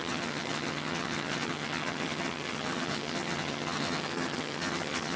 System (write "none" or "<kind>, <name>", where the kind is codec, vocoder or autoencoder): vocoder, HiFi-GAN